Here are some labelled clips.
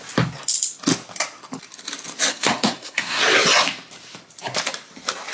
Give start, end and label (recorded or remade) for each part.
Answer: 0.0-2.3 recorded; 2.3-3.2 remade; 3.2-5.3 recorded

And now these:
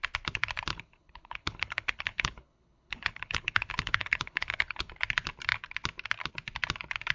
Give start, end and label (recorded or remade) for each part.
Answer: 0.0-0.7 recorded; 0.7-4.9 remade; 4.9-7.1 recorded

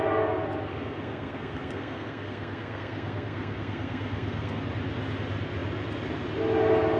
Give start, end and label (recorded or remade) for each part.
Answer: 0.0-0.7 recorded; 0.7-4.6 remade; 4.6-7.0 recorded

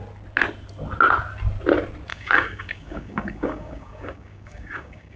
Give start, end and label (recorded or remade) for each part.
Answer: 0.0-2.1 recorded; 2.1-5.2 remade

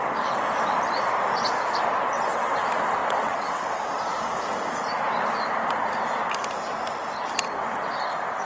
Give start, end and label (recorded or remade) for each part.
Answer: 0.0-2.1 recorded; 2.1-2.6 remade; 2.6-3.0 recorded; 3.0-3.9 remade; 3.9-8.5 recorded

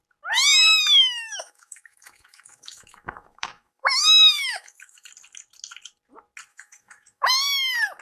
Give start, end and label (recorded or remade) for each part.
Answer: 0.0-0.7 recorded; 0.7-5.1 remade; 5.1-6.5 recorded; 6.5-7.3 remade; 7.3-8.0 recorded